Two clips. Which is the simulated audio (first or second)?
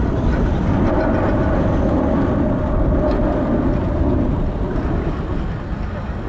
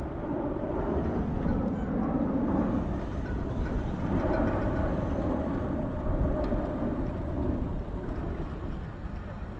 second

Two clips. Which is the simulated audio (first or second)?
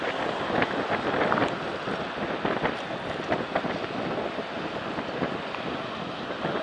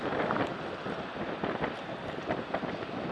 second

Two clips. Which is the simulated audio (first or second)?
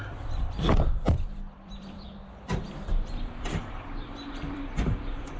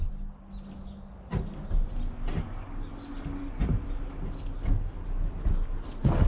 first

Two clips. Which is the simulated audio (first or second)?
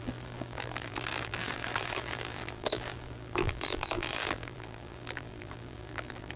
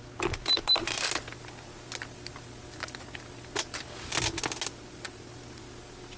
first